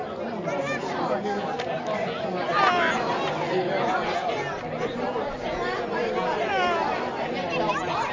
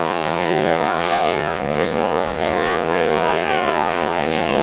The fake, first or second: second